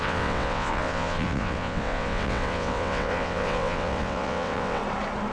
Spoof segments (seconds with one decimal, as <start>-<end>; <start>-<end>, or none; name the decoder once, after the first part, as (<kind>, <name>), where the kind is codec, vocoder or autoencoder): 0.0-4.8 (vocoder, WaveNeXt)